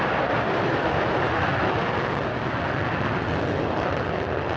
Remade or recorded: recorded